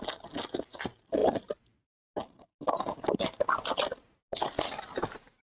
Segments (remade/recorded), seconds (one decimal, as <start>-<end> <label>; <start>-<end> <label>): 0.0-5.4 recorded